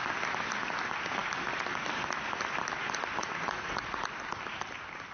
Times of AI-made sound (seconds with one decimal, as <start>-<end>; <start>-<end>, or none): 3.2-4.0